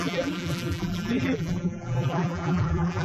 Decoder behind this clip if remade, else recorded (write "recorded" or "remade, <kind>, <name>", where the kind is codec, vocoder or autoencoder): remade, vocoder, BigVGAN v2